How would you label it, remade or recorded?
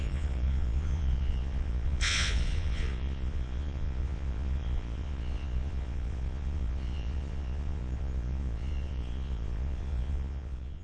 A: remade